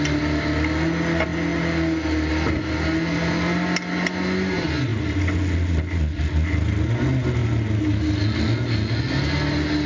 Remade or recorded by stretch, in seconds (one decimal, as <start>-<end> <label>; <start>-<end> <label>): 0.0-9.9 recorded

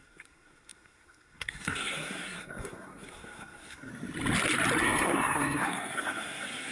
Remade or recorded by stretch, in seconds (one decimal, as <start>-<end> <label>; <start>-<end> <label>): 0.0-3.9 remade; 3.9-4.8 recorded; 4.8-6.7 remade

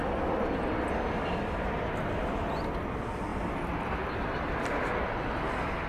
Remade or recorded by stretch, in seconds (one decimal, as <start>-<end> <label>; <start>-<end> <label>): 0.0-3.3 recorded; 3.3-4.8 remade; 4.8-5.9 recorded